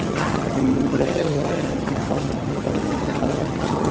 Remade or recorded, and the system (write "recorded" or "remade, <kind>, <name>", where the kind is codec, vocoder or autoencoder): remade, vocoder, HiFi-GAN